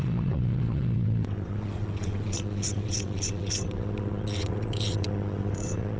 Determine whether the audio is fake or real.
fake